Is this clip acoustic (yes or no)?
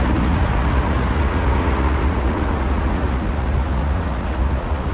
no